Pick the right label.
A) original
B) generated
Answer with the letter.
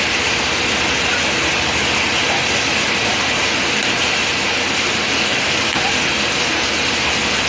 A